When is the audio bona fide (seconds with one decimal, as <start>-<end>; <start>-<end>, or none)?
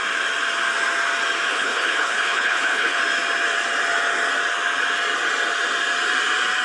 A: 0.0-1.5; 3.0-6.6